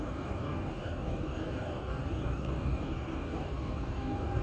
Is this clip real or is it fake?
fake